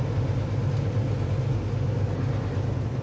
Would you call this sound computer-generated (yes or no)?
no